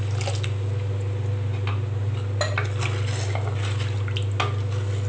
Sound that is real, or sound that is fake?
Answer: real